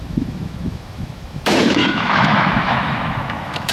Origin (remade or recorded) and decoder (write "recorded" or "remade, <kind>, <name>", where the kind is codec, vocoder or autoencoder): remade, autoencoder, DAC-VAE